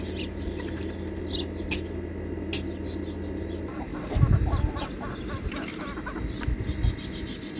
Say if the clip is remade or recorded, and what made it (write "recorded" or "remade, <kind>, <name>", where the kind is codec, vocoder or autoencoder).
recorded